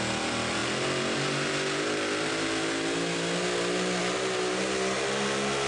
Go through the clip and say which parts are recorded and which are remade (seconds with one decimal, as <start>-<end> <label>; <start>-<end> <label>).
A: 0.0-5.7 recorded